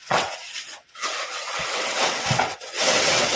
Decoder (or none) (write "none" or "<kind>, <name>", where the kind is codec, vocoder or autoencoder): vocoder, WaveNeXt